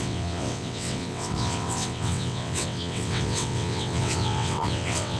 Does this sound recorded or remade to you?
remade